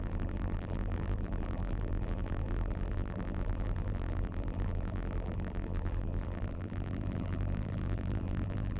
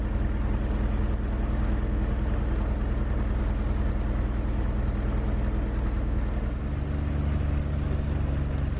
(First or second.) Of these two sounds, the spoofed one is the first